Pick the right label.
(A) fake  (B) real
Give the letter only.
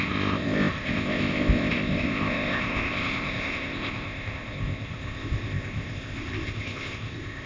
A